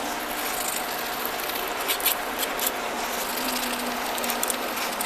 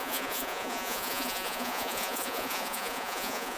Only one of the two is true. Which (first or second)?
first